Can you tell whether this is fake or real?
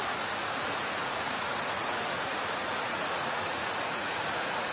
fake